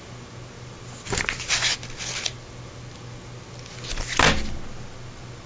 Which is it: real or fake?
real